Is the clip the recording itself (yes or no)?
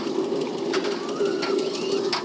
yes